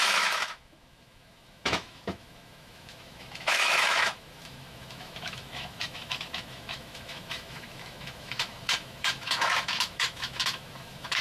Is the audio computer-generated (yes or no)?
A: yes